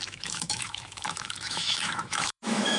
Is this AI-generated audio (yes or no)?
yes